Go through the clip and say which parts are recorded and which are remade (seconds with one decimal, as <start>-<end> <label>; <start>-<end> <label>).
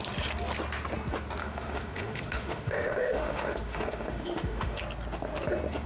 0.0-1.4 recorded; 1.4-4.8 remade; 4.8-5.9 recorded